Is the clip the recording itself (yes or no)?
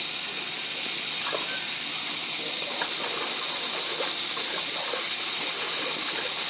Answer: yes